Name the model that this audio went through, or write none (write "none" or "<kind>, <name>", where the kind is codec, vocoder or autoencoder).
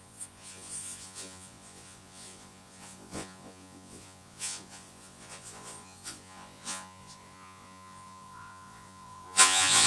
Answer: vocoder, Vocos